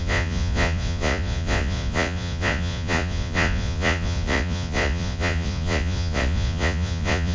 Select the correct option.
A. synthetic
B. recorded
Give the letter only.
A